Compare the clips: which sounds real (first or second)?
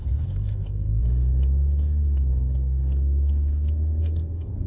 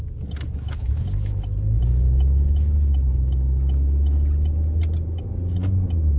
second